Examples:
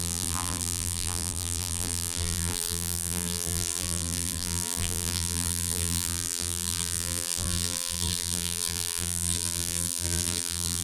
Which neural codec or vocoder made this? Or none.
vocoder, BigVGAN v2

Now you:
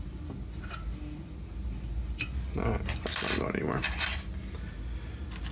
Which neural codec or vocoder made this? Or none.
none